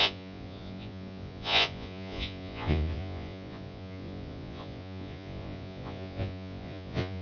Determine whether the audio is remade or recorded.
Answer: remade